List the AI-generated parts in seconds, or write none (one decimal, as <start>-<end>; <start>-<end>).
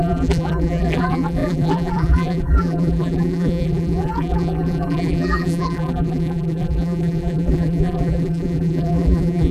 0.0-9.5